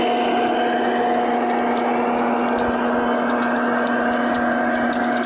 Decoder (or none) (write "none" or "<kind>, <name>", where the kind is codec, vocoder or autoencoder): none